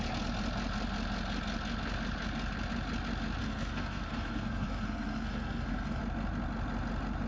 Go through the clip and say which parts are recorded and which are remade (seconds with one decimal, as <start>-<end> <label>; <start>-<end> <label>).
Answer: 0.0-3.4 recorded; 3.4-6.0 remade; 6.0-7.3 recorded

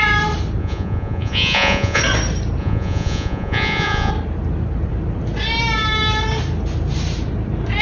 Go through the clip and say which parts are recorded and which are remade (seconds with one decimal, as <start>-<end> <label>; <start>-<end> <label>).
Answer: 0.0-0.6 recorded; 0.6-2.0 remade; 2.0-2.6 recorded; 2.6-4.1 remade; 4.1-7.8 recorded

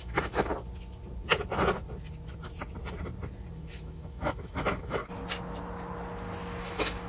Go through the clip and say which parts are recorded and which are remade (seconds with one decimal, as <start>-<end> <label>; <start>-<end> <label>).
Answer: 0.0-0.5 remade; 0.5-3.5 recorded; 3.5-5.0 remade; 5.0-6.6 recorded; 6.6-7.1 remade

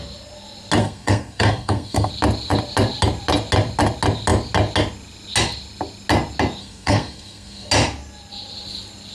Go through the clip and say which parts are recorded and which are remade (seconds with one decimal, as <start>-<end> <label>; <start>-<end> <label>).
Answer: 0.0-0.8 recorded; 0.8-2.1 remade; 2.1-6.6 recorded; 6.6-7.7 remade; 7.7-9.1 recorded

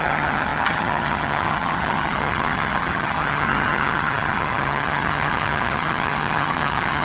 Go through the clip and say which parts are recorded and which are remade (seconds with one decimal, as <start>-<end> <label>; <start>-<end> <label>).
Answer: 0.0-7.0 remade

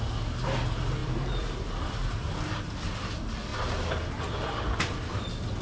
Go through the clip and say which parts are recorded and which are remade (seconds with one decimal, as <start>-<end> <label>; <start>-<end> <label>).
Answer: 0.0-1.0 recorded; 1.0-2.2 remade; 2.2-5.6 recorded

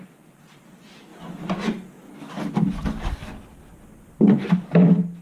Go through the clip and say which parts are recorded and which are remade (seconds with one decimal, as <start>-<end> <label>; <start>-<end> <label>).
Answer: 0.0-1.1 remade; 1.1-4.2 recorded; 4.2-5.2 remade